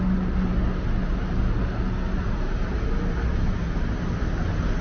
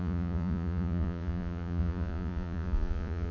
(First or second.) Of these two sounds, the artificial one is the second